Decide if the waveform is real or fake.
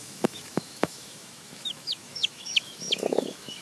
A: fake